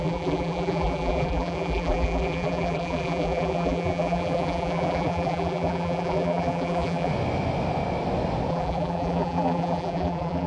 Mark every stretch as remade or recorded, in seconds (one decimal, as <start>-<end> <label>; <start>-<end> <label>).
0.0-7.1 remade; 7.1-8.5 recorded; 8.5-10.5 remade